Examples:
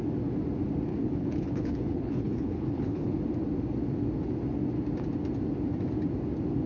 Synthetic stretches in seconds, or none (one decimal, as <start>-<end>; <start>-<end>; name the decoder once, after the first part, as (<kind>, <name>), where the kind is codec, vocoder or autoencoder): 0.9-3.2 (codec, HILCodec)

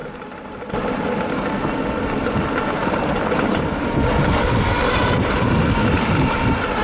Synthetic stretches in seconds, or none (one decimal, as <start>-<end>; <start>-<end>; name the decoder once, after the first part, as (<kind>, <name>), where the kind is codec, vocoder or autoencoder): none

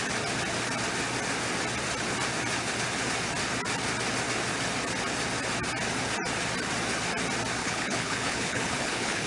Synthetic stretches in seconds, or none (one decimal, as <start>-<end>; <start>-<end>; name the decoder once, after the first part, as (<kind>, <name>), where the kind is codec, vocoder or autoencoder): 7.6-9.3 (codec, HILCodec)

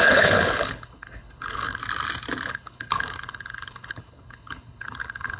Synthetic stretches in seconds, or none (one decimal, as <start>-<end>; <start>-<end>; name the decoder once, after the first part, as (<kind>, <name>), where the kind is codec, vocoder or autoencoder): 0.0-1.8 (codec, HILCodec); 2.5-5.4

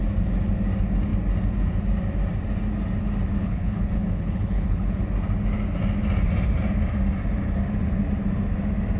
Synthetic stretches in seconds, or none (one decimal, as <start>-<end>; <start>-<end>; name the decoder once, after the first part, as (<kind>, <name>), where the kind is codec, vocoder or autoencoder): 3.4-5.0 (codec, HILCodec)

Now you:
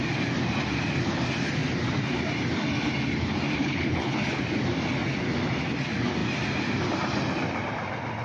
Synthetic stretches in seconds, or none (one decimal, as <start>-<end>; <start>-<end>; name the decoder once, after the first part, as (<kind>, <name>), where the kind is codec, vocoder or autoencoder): 3.6-4.4 (codec, HILCodec)

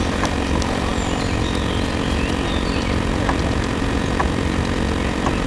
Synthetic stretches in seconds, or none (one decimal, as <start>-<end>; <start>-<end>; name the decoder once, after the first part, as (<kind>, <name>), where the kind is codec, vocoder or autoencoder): none